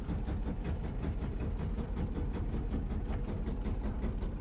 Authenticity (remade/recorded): remade